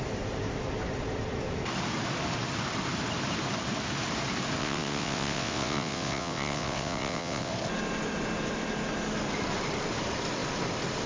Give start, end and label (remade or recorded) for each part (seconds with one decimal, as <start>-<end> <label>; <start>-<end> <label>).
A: 0.0-4.6 recorded; 4.6-7.5 remade; 7.5-11.1 recorded